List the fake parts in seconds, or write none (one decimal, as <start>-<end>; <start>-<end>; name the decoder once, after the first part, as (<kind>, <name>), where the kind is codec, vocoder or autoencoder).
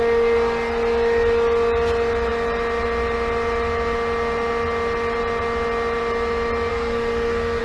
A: 6.7-7.6 (codec, SNAC)